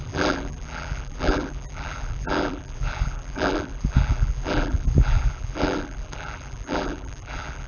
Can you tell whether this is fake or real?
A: fake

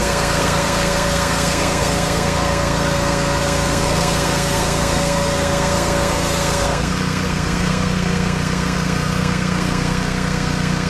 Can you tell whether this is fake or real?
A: fake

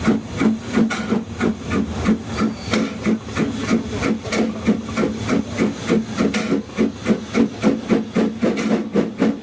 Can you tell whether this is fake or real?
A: real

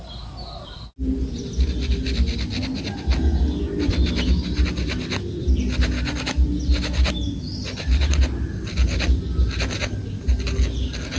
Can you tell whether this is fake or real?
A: real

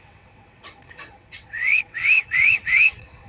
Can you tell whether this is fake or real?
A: fake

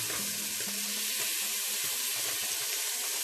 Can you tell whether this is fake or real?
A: real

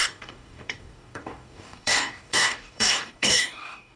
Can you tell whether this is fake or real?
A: fake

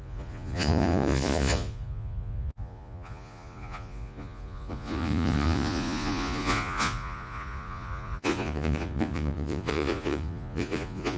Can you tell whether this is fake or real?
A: fake